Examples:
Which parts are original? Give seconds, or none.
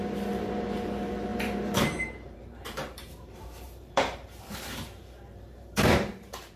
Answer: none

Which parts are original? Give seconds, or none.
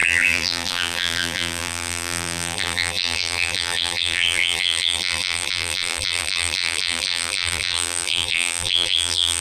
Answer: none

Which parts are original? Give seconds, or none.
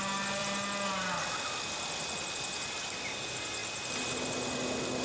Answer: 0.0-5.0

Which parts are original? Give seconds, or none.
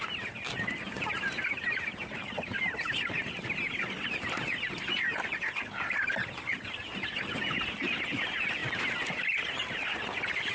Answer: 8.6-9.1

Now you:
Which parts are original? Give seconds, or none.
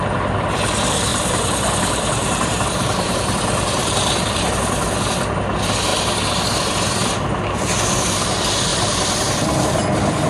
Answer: 0.0-1.1; 4.5-8.7; 9.3-10.3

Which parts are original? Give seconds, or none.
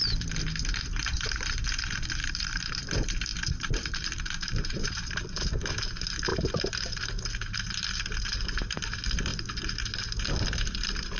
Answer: 0.0-2.2; 2.8-3.3; 5.2-6.3; 7.0-11.2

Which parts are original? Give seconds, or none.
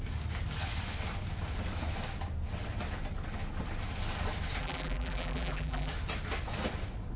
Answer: 0.0-4.6; 5.9-7.2